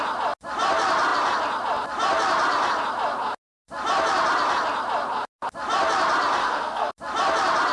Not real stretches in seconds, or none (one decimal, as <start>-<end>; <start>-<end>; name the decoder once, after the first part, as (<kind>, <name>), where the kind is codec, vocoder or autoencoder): 6.4-6.9 (codec, SNAC)